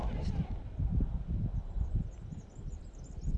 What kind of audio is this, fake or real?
real